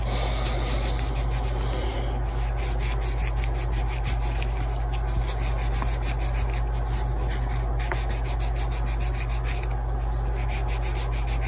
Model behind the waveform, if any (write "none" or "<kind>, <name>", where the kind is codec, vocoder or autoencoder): none